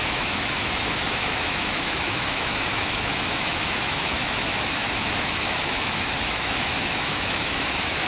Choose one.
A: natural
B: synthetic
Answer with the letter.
B